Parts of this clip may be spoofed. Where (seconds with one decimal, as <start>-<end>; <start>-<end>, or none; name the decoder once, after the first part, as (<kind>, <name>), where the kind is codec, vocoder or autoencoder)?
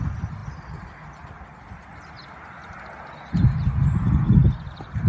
none